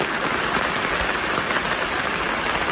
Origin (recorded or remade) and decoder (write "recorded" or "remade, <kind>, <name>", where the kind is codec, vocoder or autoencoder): recorded